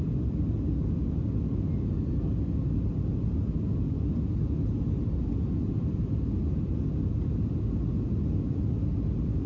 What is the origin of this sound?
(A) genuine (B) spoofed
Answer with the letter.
A